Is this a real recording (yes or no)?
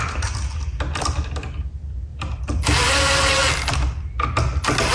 yes